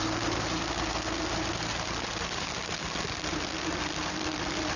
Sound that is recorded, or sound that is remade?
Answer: recorded